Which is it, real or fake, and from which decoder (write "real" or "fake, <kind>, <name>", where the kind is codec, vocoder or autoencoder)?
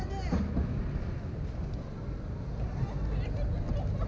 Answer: real